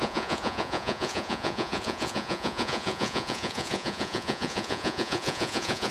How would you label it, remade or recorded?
remade